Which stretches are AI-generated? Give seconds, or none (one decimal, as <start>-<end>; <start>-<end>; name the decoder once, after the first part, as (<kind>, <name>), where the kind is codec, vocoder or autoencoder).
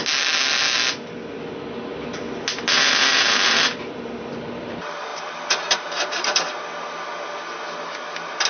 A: 5.1-6.5 (vocoder, BigVGAN v2)